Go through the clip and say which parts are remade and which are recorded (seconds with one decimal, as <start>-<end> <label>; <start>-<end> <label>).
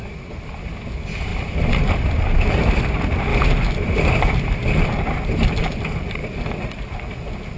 0.0-1.3 recorded; 1.3-2.8 remade; 2.8-3.3 recorded; 3.3-5.2 remade; 5.2-7.6 recorded